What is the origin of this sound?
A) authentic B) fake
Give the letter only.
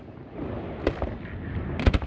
B